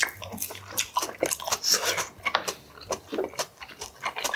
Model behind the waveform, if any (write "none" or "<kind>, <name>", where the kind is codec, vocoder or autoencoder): none